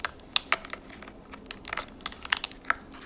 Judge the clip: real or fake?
real